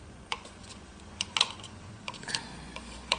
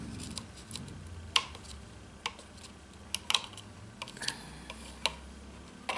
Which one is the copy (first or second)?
first